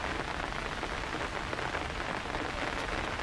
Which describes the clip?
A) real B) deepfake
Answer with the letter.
A